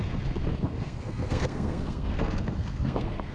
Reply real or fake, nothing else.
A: fake